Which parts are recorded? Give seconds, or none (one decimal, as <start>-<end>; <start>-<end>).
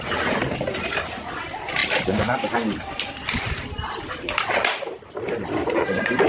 0.0-6.3